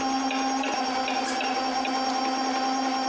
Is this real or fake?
real